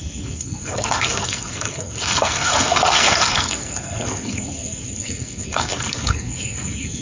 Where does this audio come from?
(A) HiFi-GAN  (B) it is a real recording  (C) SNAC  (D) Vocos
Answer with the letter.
C